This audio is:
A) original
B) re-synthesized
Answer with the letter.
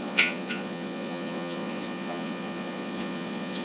B